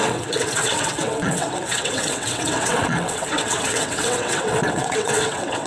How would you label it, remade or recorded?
remade